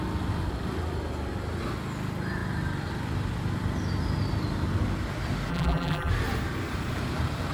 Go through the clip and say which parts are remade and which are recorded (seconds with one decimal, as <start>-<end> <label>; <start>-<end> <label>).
0.0-5.5 recorded; 5.5-6.1 remade; 6.1-7.5 recorded

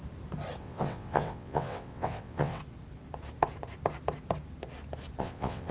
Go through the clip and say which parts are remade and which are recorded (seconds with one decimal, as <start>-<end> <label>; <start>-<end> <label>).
0.0-0.6 recorded; 0.6-2.6 remade; 2.6-5.2 recorded; 5.2-5.7 remade